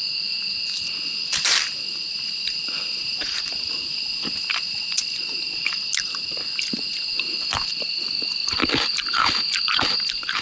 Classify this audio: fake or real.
real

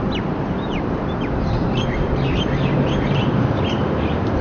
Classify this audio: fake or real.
fake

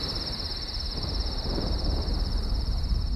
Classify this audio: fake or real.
fake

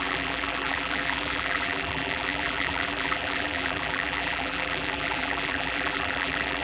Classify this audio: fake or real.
fake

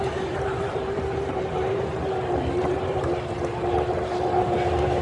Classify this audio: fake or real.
fake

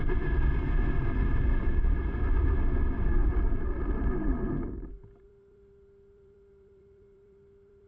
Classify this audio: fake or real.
fake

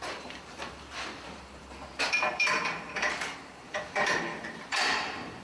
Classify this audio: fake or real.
fake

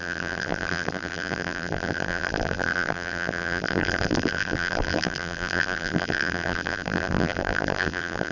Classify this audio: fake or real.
fake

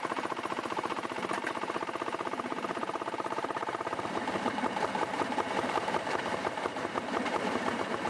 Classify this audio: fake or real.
fake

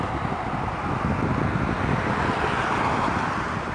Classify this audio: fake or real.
real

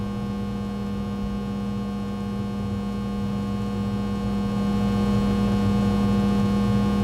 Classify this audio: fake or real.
real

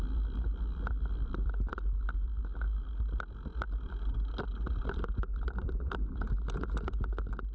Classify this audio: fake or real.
real